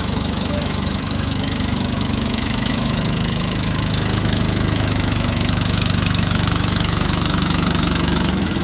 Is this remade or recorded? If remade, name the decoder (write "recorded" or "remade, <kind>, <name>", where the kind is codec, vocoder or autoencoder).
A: remade, autoencoder, DAC-VAE